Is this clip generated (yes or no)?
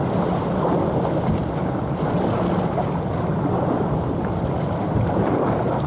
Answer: no